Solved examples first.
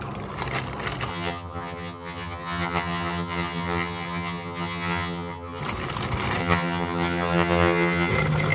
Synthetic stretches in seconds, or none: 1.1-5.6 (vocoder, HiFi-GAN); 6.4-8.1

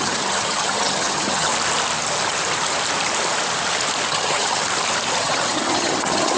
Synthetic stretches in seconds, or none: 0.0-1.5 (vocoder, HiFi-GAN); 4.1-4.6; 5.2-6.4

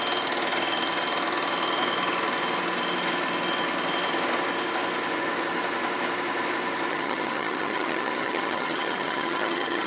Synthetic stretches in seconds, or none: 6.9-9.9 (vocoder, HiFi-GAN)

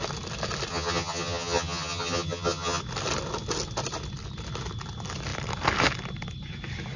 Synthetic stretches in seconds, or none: 0.7-2.8 (vocoder, HiFi-GAN)

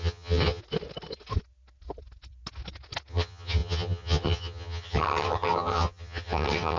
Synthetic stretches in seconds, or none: 0.0-0.6 (vocoder, HiFi-GAN); 3.1-6.8